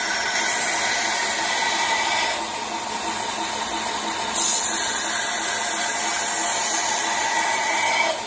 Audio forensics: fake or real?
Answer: real